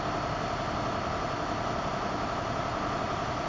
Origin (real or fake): real